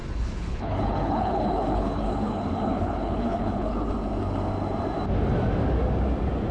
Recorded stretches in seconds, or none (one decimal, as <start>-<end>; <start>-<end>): 3.9-6.5